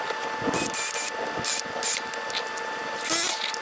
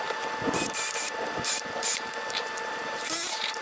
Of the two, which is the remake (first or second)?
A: second